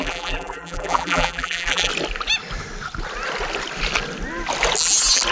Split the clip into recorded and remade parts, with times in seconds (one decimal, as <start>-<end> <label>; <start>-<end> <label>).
0.0-1.9 remade; 1.9-5.3 recorded